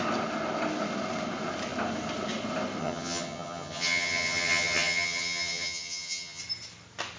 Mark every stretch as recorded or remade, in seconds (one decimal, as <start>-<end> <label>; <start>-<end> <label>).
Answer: 0.0-2.8 recorded; 2.8-6.4 remade; 6.4-7.2 recorded